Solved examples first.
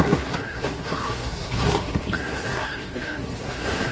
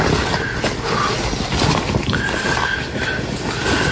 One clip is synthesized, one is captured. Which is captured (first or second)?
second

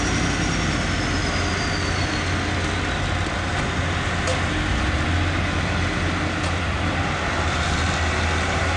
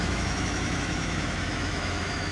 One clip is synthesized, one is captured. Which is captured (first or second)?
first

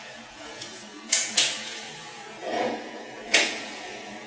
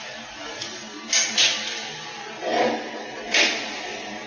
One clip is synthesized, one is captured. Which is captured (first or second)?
second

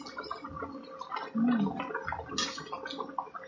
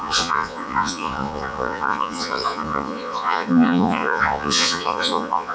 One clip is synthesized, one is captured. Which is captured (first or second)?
first